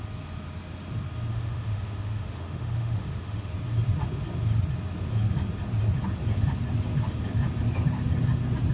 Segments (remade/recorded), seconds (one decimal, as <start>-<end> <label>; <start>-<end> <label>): 0.0-1.3 recorded; 1.3-3.5 remade; 3.5-8.7 recorded